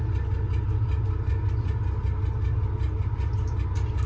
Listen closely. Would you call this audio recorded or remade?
recorded